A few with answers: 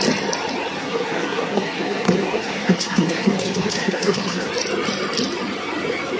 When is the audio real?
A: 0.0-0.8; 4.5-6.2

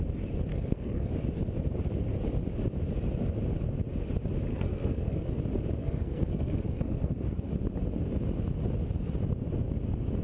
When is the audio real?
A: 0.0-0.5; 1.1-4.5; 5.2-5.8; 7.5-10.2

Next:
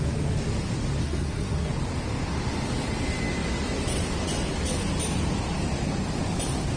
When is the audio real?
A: 0.0-1.0; 1.7-6.8

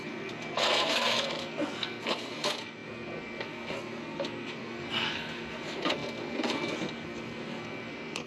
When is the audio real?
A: none

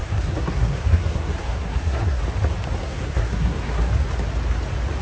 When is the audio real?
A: 2.2-2.8; 3.9-5.0